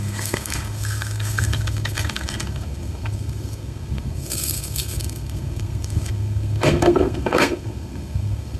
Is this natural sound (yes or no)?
no